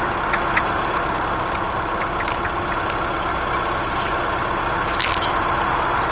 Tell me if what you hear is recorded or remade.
recorded